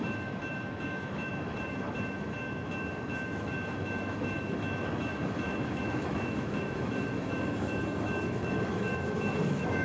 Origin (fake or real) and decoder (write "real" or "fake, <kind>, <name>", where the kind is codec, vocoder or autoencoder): fake, autoencoder, DAC-VAE